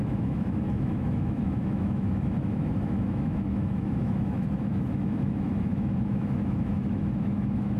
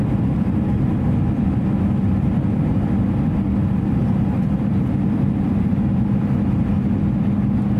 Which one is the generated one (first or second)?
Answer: first